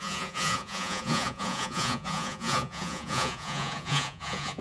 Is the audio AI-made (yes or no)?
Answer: yes